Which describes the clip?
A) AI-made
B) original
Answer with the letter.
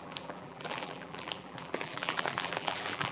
A